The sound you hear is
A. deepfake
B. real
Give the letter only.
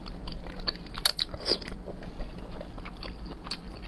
B